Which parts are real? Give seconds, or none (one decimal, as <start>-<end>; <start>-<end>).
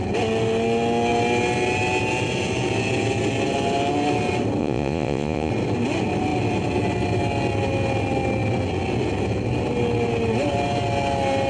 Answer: 0.0-4.6; 5.5-11.5